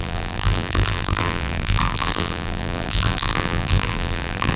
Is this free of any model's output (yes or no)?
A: no